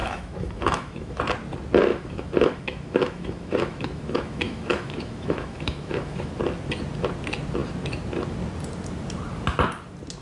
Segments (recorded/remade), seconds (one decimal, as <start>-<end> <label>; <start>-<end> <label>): 0.0-1.2 remade; 1.2-1.9 recorded; 1.9-6.3 remade; 6.3-10.2 recorded